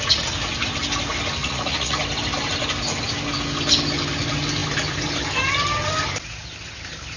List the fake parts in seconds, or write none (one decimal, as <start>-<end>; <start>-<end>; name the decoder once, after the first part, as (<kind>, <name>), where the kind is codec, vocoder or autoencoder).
1.4-2.0 (vocoder, Vocos)